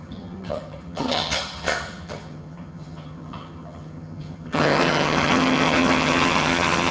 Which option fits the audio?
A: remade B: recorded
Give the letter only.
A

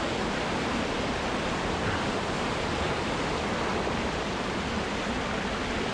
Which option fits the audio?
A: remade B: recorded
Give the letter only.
B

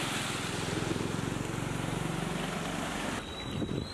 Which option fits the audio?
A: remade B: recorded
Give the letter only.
B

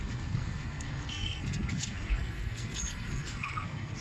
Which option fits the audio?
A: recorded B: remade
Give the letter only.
B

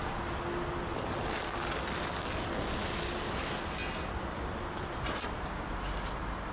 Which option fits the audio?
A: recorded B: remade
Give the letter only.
A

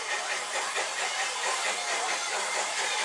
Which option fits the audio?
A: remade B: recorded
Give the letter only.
B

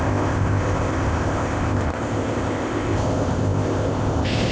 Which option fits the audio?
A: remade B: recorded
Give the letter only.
A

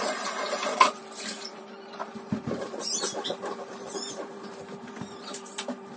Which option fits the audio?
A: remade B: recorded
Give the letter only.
A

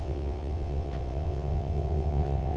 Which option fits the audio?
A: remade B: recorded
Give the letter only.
A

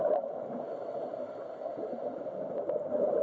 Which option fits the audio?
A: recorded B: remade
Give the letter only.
A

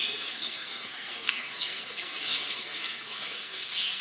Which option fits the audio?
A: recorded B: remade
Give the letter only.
B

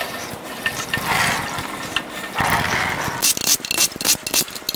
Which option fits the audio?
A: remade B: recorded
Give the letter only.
B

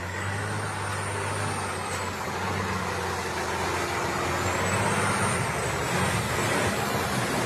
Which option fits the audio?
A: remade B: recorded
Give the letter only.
B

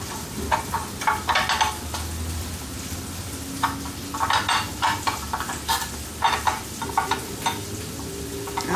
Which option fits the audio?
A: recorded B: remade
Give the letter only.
A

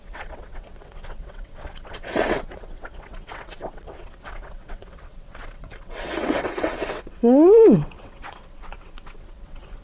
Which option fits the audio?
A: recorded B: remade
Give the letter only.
B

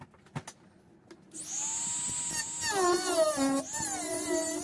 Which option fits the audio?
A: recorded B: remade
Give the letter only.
A